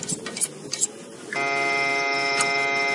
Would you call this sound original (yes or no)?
yes